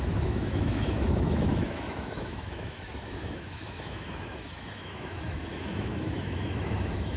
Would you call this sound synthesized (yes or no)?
yes